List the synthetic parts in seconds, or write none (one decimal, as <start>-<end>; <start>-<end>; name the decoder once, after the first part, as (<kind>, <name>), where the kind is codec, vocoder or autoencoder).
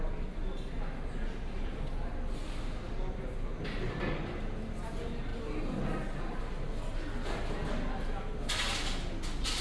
none